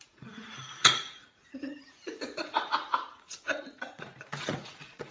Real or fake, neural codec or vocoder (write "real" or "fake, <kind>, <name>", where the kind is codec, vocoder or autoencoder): fake, vocoder, Vocos